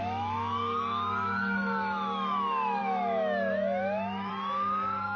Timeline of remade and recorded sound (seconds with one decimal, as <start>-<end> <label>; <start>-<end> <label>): 0.0-5.2 remade